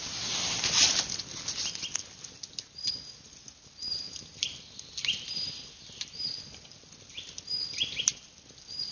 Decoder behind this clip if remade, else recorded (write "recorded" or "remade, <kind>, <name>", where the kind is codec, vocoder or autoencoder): recorded